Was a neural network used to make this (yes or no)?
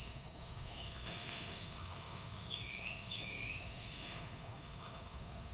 yes